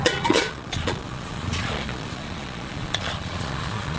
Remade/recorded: remade